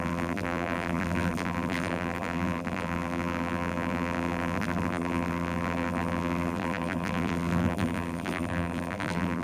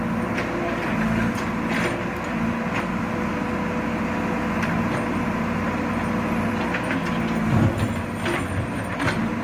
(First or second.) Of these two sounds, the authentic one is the second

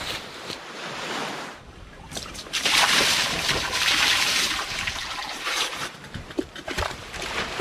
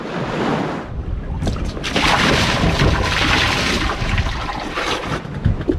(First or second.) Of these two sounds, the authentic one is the second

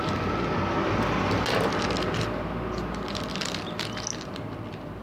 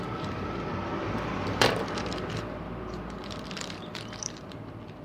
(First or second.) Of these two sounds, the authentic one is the first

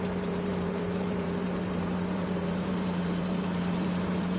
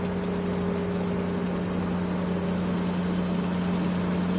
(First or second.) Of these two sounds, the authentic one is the second